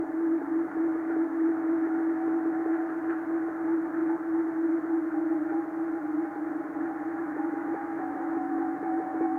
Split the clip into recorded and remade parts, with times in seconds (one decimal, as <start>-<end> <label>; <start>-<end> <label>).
0.0-0.9 recorded; 0.9-2.8 remade; 2.8-7.2 recorded; 7.2-9.4 remade